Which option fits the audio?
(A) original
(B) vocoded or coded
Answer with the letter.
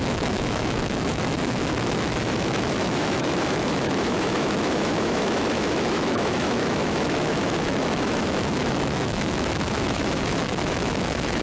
B